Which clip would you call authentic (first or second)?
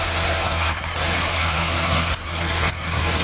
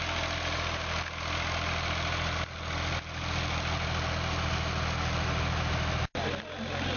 second